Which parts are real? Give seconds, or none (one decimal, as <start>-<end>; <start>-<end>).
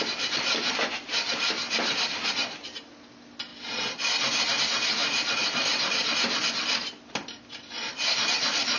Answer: 0.0-8.8